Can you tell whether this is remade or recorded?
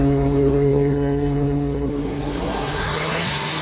remade